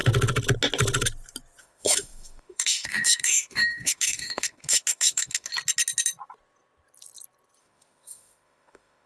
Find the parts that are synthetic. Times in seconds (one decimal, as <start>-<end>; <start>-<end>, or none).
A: 1.6-5.5; 7.6-9.1